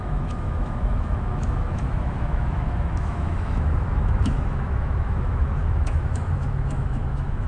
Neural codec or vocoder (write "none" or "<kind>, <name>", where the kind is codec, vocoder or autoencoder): autoencoder, DAC-VAE